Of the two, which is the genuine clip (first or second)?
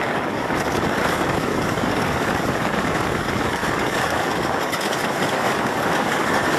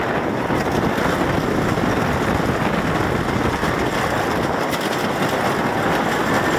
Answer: second